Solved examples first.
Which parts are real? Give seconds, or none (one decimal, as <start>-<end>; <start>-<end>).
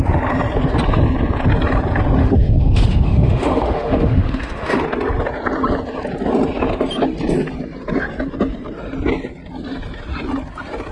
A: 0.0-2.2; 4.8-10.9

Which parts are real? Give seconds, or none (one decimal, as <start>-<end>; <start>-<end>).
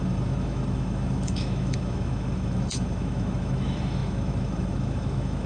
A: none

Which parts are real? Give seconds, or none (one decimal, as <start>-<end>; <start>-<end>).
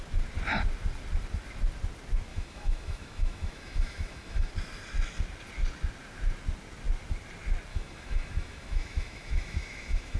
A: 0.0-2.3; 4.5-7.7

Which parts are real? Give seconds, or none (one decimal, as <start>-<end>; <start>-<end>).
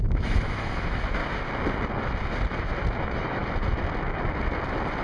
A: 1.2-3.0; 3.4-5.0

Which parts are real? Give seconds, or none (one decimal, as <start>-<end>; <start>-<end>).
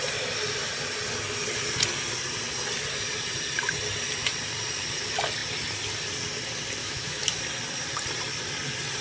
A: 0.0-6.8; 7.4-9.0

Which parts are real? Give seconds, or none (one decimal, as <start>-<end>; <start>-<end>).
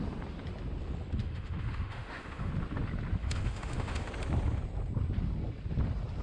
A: 0.0-1.2; 2.5-3.2; 4.1-6.2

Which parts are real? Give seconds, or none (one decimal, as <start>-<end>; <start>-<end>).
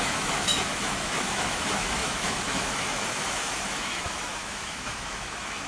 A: none